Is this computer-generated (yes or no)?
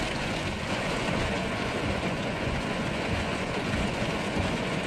yes